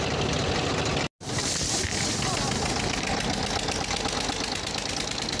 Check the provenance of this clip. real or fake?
real